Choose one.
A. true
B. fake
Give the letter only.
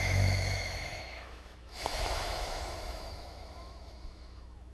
B